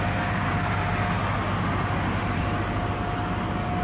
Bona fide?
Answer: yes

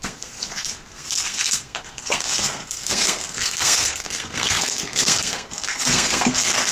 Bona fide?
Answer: no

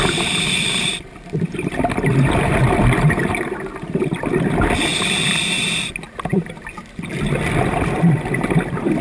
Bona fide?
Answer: yes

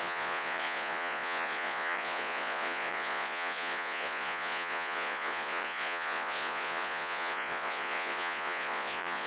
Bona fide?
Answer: no